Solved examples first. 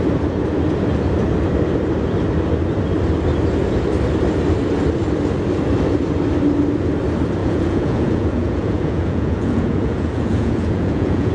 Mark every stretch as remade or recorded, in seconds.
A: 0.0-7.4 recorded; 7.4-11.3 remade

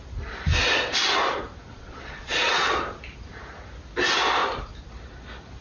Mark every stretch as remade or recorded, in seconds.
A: 0.0-1.7 recorded; 1.7-2.5 remade; 2.5-5.6 recorded

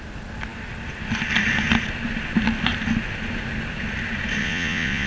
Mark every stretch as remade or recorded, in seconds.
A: 0.0-4.4 recorded; 4.4-5.1 remade